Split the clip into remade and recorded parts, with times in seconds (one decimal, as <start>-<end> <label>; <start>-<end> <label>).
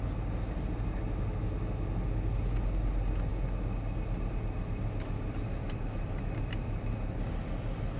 0.0-5.6 recorded; 5.6-6.2 remade; 6.2-8.0 recorded